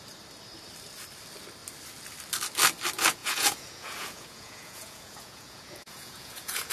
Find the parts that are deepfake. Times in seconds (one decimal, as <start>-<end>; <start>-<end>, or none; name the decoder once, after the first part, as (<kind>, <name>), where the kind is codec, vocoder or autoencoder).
3.2-6.7 (vocoder, Vocos)